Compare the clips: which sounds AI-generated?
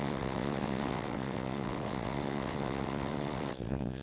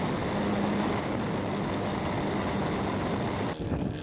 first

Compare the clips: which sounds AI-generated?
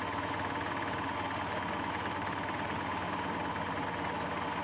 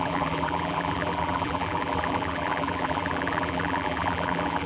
second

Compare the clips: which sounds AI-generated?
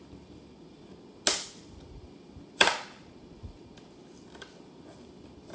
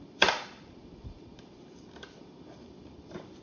second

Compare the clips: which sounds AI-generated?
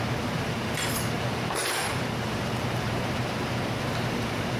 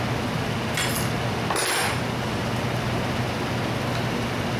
first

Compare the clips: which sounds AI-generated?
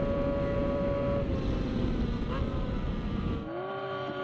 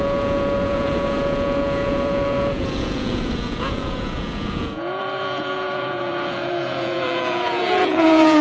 second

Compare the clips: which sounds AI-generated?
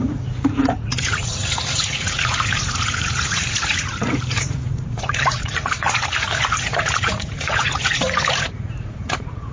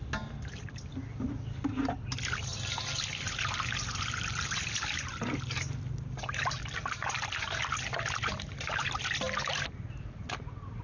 first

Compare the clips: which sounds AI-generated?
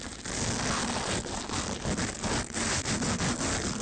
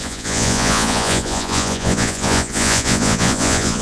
second